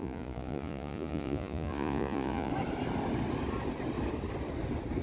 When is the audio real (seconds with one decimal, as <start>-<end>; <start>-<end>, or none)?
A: 2.5-5.0